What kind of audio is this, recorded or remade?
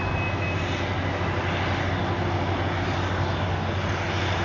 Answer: recorded